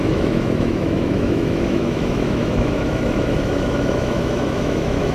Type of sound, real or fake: fake